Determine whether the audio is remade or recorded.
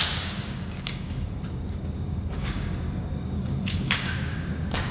remade